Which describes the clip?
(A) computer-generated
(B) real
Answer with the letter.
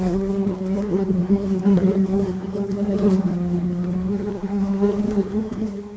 A